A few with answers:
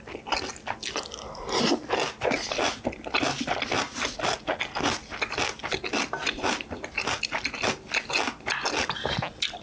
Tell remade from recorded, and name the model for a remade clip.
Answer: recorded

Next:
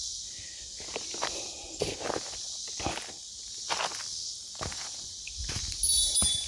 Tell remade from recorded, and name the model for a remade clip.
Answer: recorded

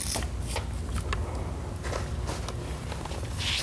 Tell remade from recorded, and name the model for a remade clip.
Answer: recorded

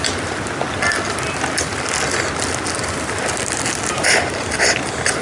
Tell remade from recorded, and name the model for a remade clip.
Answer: recorded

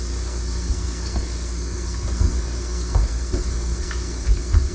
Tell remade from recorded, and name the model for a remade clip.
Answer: remade, codec, SNAC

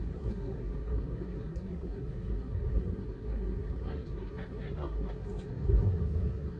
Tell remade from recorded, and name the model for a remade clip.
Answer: remade, codec, SNAC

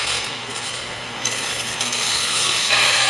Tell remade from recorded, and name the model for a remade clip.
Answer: remade, codec, SNAC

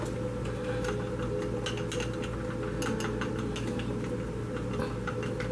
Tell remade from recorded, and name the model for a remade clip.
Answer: recorded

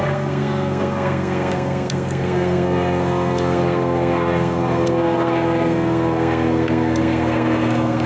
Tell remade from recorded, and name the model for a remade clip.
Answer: remade, codec, SNAC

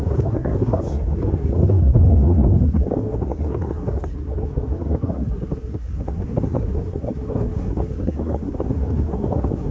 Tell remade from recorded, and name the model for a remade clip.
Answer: remade, codec, SNAC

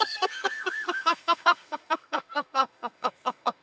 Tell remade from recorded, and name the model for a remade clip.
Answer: remade, codec, SNAC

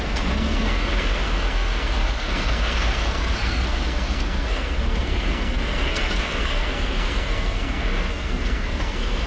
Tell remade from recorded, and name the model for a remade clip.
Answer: remade, codec, SNAC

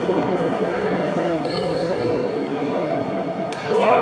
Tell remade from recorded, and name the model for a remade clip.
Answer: remade, codec, SNAC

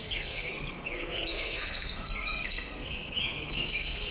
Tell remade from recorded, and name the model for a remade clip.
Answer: remade, codec, SNAC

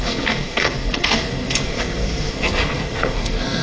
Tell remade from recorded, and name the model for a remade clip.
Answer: remade, codec, SNAC